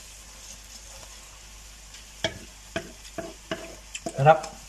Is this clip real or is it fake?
real